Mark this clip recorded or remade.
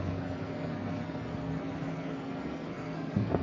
remade